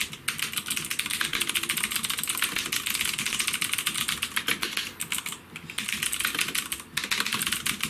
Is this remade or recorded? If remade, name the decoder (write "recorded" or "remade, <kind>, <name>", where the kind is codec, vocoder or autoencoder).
recorded